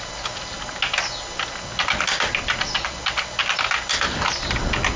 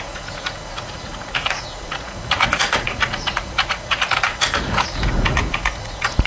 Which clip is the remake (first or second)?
second